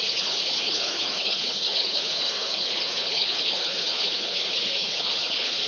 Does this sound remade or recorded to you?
remade